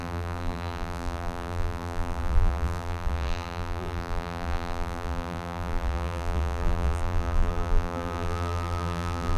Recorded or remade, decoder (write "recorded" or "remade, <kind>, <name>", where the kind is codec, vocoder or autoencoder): remade, vocoder, BigVGAN v2